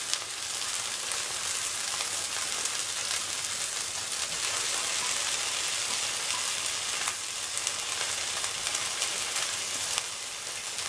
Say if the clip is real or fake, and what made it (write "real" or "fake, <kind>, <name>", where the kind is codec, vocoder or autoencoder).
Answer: real